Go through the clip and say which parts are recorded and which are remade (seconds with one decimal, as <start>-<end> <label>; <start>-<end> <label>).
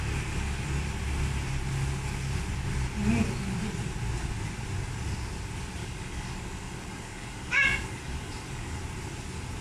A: 0.0-5.8 recorded; 5.8-8.8 remade; 8.8-9.6 recorded